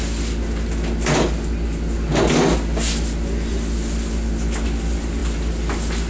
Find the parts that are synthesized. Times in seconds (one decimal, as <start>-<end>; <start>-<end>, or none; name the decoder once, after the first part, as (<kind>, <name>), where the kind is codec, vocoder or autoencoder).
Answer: none